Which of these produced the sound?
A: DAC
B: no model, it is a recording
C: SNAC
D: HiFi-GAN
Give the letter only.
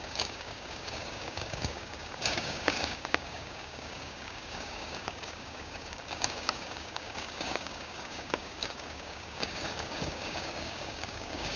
A